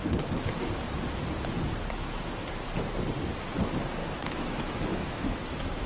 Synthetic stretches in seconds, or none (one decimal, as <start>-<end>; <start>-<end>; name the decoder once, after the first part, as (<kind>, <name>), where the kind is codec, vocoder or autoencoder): 4.0-5.9 (autoencoder, DAC-VAE)